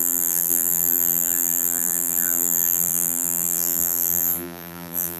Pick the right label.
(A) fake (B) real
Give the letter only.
A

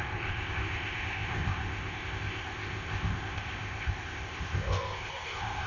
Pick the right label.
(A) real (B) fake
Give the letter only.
B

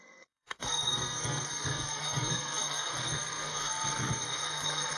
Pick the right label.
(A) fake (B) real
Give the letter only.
A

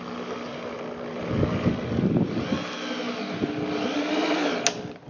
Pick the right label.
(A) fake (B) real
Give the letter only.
B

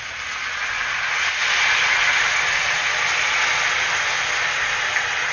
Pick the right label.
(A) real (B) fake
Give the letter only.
A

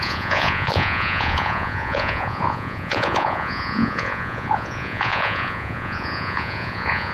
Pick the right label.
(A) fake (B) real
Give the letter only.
A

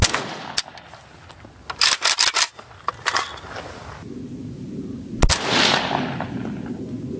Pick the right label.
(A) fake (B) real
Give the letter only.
B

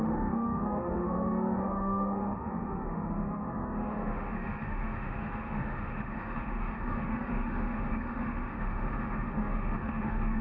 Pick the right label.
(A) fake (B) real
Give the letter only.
A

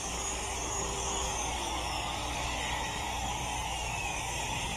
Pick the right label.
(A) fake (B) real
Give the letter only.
A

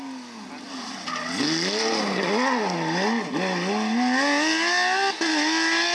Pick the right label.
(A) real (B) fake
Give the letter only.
A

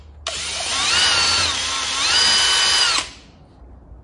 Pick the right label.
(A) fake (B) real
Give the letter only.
B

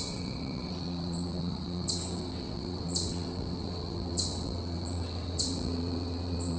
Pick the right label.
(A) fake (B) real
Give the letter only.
A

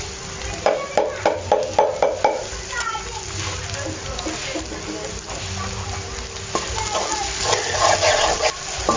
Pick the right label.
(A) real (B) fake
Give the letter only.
A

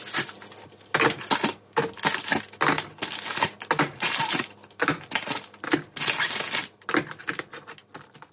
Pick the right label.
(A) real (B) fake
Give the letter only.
A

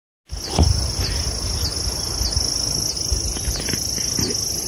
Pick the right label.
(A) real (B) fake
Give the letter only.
A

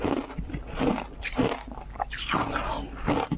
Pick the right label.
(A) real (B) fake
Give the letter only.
A